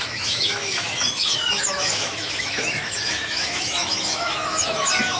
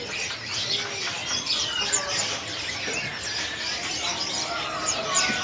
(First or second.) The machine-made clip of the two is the first